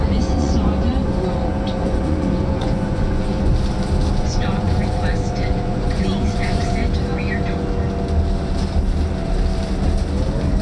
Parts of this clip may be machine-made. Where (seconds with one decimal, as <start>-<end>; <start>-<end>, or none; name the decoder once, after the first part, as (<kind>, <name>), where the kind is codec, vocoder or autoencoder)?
0.0-3.5 (vocoder, Vocos); 4.2-6.8